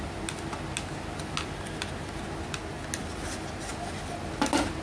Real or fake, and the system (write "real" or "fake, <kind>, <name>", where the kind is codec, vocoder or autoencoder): real